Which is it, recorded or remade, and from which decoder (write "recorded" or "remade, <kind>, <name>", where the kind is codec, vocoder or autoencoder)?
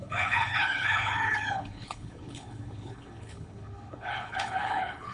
remade, codec, HILCodec